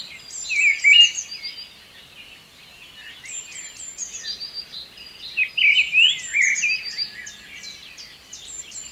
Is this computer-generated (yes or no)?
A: no